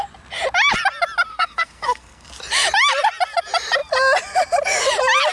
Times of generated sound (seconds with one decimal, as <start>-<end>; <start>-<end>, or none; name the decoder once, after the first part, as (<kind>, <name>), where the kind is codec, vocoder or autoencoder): 1.3-2.3 (codec, SNAC)